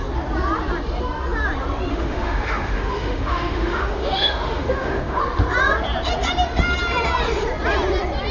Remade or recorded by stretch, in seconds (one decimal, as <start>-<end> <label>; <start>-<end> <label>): 0.0-1.9 recorded; 1.9-5.2 remade; 5.2-8.3 recorded